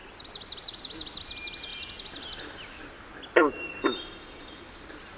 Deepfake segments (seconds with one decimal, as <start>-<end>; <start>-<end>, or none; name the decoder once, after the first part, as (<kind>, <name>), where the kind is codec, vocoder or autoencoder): none